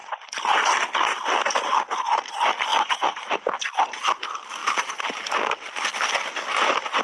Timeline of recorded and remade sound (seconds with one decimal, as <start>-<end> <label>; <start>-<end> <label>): 0.0-1.7 recorded; 1.7-2.3 remade; 2.3-2.7 recorded; 2.7-3.3 remade; 3.3-4.6 recorded; 4.6-5.3 remade; 5.3-7.0 recorded